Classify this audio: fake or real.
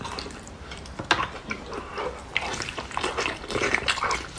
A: real